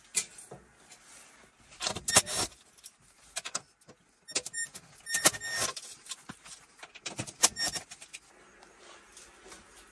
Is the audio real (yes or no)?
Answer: yes